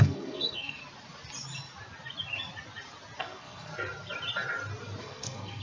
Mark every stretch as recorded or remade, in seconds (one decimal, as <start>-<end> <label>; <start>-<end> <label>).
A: 0.0-0.8 remade; 0.8-3.2 recorded; 3.2-3.7 remade; 3.7-5.0 recorded; 5.0-5.6 remade